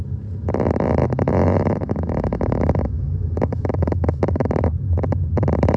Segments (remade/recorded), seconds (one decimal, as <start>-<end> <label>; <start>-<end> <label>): 0.0-1.0 recorded; 1.0-4.5 remade; 4.5-5.8 recorded